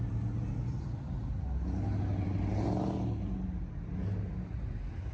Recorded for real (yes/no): yes